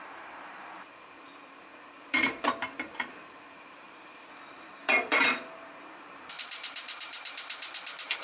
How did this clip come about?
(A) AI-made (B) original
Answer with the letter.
A